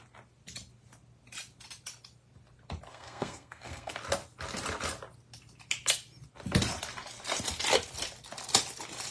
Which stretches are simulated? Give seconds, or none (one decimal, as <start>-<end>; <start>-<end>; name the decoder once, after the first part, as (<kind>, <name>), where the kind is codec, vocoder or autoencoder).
2.9-3.9 (codec, SNAC)